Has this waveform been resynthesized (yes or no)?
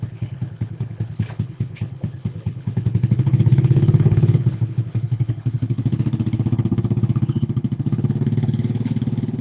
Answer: yes